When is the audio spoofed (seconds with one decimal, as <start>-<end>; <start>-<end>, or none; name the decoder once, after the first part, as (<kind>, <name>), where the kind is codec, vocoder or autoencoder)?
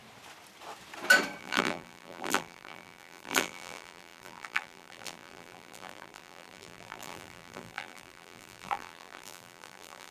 1.4-10.1 (vocoder, BigVGAN v2)